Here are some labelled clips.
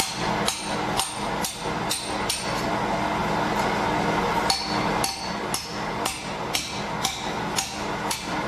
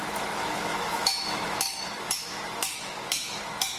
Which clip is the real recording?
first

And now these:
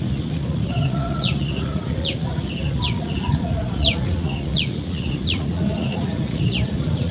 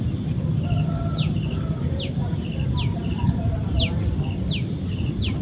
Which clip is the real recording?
second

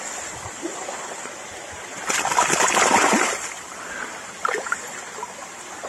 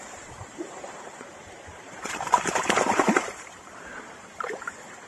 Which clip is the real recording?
first